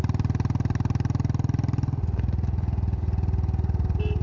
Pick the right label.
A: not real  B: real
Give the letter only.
B